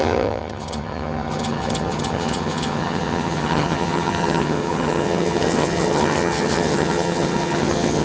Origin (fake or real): fake